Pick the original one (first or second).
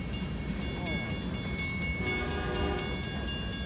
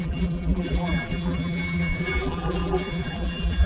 first